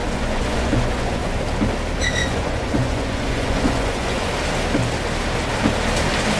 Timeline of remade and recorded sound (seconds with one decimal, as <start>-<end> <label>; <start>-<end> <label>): 0.0-1.4 remade; 1.4-2.2 recorded; 2.2-4.3 remade; 4.3-6.4 recorded